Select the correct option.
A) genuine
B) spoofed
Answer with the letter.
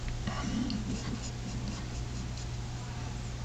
A